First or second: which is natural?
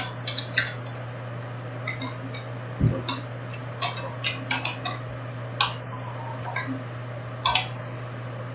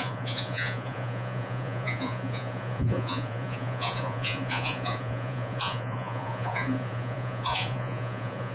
first